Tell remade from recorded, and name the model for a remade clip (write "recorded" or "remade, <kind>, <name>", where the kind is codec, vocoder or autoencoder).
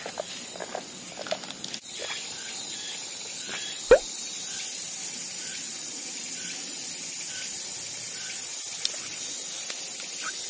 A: recorded